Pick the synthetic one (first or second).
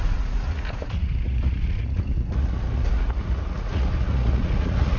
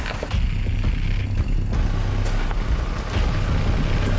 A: first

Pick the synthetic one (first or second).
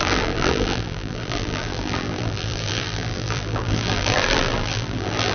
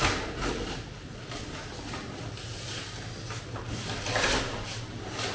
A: first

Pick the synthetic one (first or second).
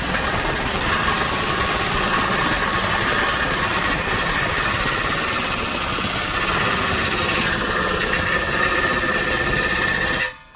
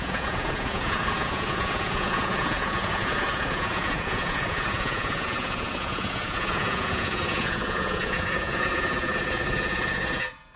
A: second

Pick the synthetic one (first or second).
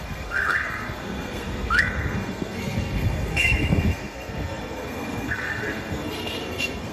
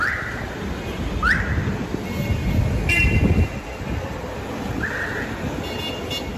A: first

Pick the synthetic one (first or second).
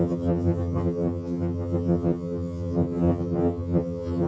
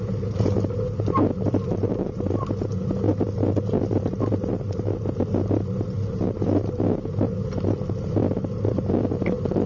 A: first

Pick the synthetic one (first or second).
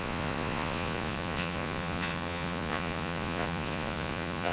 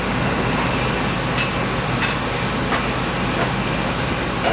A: first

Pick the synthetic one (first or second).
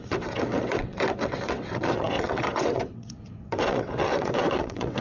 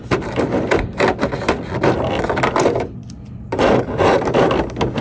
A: first